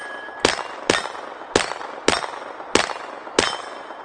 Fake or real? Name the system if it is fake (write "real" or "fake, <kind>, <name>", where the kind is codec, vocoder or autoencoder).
real